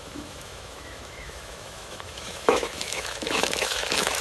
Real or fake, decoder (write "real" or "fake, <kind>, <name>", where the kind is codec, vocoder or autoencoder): fake, autoencoder, DAC-VAE